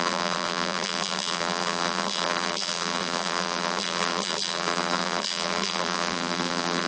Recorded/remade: remade